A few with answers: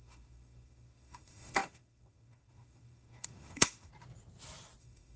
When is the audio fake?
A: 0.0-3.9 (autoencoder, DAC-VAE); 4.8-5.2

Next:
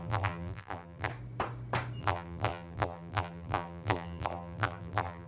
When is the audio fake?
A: 0.0-1.1 (vocoder, BigVGAN v2); 2.0-5.3

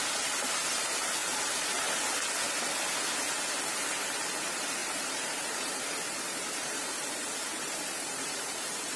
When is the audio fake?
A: 4.8-9.0 (vocoder, BigVGAN v2)

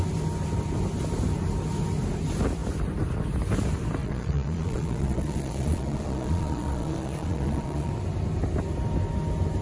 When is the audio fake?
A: 4.0-7.9 (vocoder, Vocos)

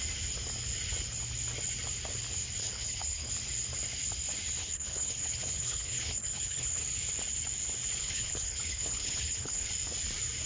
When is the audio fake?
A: 2.6-3.3 (codec, HILCodec); 4.6-6.8; 8.0-9.7

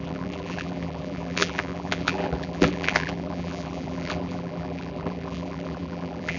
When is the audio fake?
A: 0.0-6.4 (vocoder, BigVGAN v2)

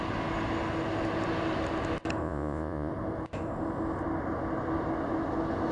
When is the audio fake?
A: 2.2-2.9 (vocoder, Vocos)

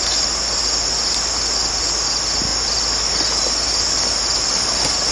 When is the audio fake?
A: none